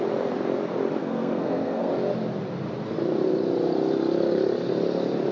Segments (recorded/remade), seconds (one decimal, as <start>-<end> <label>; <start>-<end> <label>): 0.0-1.0 recorded; 1.0-1.9 remade; 1.9-5.3 recorded